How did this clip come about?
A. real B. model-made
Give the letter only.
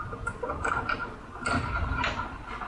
A